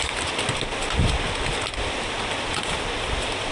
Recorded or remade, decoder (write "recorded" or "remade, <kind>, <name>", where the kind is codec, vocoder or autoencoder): recorded